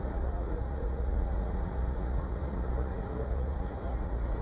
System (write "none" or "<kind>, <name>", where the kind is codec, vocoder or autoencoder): vocoder, Vocos